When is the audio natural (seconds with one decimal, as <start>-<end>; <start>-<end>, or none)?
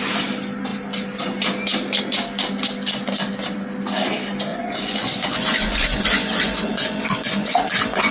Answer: 0.0-4.5